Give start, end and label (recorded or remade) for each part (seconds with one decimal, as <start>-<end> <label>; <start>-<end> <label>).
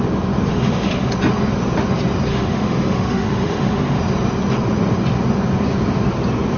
0.0-0.5 recorded; 0.5-1.1 remade; 1.1-2.3 recorded; 2.3-4.0 remade; 4.0-6.6 recorded